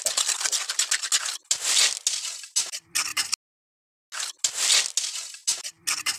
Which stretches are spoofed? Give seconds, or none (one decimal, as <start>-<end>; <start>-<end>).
none